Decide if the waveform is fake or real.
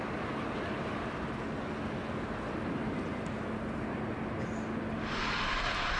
real